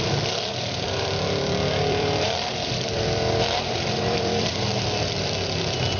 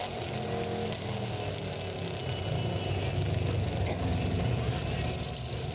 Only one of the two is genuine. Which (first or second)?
second